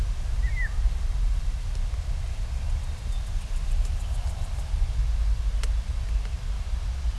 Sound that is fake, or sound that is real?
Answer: real